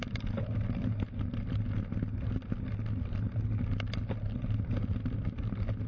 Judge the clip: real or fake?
real